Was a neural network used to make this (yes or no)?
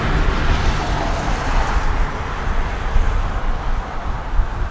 no